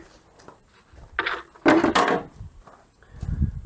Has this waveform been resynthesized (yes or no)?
no